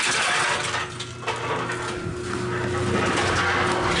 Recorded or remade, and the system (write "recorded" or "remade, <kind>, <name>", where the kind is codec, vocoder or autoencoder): recorded